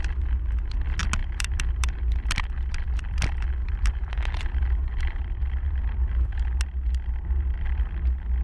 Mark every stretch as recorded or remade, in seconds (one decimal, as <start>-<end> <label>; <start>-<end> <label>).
0.0-1.2 recorded; 1.2-2.0 remade; 2.0-3.6 recorded; 3.6-6.4 remade; 6.4-8.4 recorded